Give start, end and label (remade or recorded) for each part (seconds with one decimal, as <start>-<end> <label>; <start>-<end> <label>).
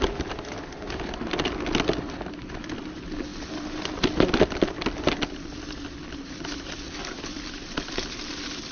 0.0-8.7 recorded